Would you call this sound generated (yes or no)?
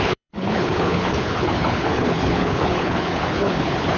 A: yes